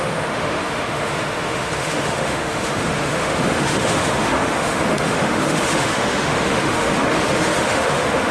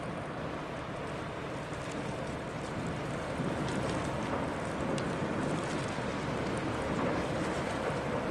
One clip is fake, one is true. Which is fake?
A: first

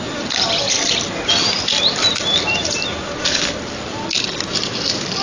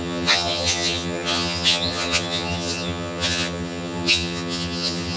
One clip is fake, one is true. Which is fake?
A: second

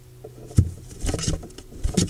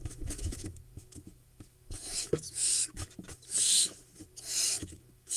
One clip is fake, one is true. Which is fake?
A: second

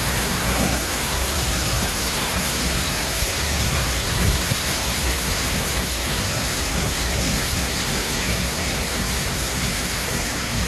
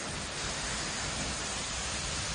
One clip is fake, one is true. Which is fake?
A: first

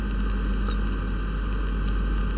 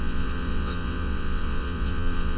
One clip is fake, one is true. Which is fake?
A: second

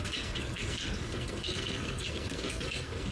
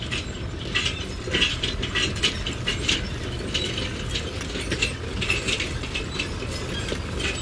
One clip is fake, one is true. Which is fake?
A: first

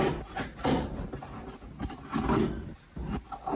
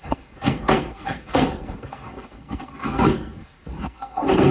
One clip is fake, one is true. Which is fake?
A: second